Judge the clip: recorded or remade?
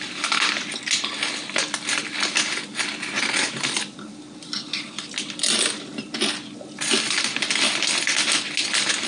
recorded